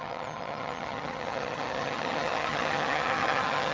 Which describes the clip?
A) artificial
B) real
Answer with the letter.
A